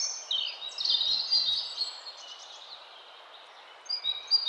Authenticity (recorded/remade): recorded